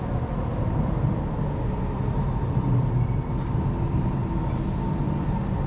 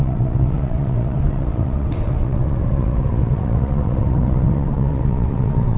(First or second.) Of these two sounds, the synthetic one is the second